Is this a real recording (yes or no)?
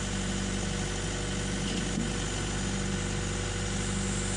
yes